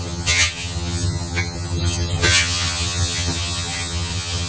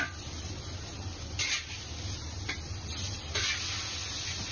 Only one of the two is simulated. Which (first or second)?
first